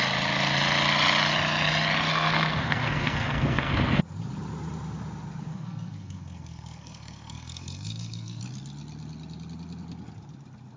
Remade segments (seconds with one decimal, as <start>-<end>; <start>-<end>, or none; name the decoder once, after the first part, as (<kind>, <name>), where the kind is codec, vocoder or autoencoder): 2.1-4.0 (codec, SNAC); 5.5-8.4